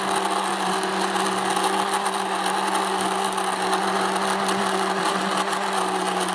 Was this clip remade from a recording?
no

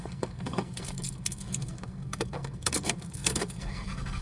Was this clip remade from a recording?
yes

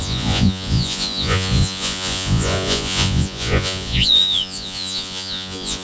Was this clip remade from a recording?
yes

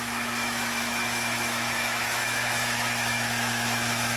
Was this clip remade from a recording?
yes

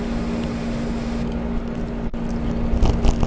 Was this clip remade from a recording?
no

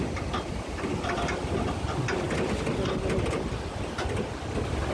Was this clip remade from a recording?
no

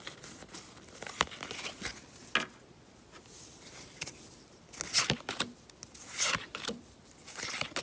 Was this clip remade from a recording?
no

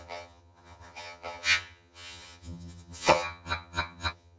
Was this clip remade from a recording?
yes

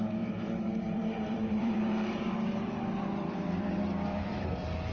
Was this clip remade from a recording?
yes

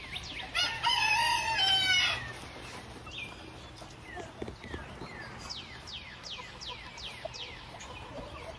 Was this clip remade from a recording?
no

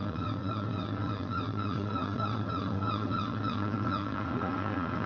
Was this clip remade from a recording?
yes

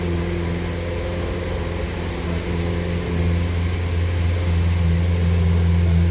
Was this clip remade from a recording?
no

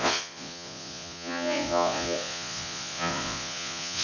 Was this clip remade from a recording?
yes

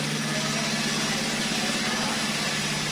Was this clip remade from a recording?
no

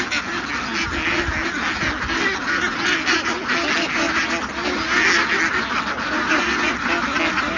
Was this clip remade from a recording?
no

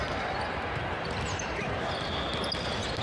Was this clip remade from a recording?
no